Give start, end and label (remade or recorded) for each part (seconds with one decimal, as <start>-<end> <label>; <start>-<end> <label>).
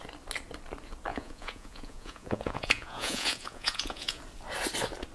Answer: 0.0-1.1 recorded; 1.1-4.2 remade; 4.2-5.1 recorded